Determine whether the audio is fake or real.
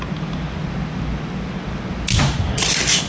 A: real